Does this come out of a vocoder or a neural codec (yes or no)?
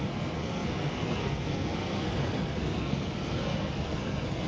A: yes